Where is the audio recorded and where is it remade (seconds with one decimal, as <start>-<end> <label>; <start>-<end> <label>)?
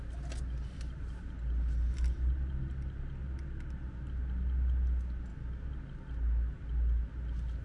0.0-7.6 recorded